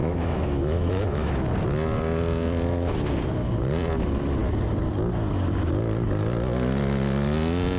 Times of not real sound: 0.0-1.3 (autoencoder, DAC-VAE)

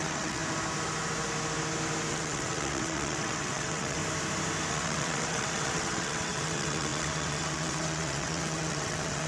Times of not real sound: 0.0-0.4 (vocoder, WaveNeXt); 2.1-4.0; 4.7-9.3

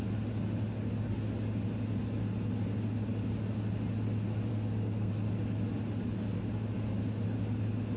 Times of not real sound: 4.5-5.1 (codec, SNAC)

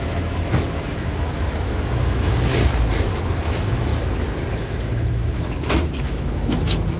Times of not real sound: 0.0-2.5 (autoencoder, DAC-VAE); 3.3-3.9; 4.5-7.0

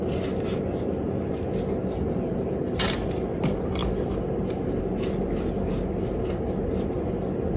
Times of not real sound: none

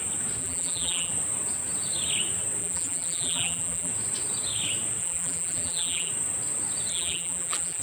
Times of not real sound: 0.4-1.1 (vocoder, BigVGAN v2); 2.6-3.9; 5.0-6.1; 6.9-7.8

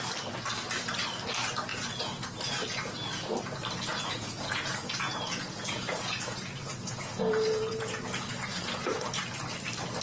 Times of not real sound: 1.7-2.3 (vocoder, Vocos); 3.9-8.3

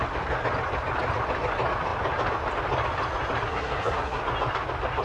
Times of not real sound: 3.5-4.2 (codec, SNAC)